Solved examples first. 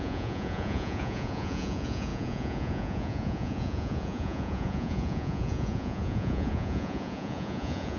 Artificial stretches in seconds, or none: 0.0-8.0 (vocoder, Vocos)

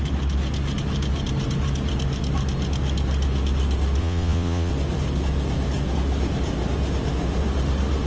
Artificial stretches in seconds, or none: 4.0-4.7 (vocoder, Vocos)

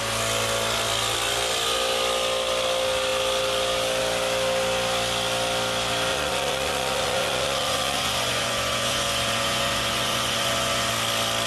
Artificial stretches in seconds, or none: 6.1-10.9 (vocoder, Vocos)

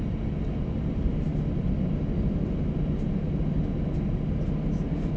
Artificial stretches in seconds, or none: none

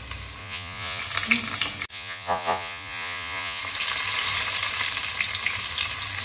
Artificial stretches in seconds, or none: 0.4-1.0 (vocoder, Vocos); 1.9-3.6

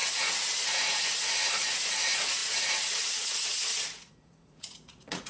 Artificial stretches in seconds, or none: 0.0-5.3 (vocoder, Vocos)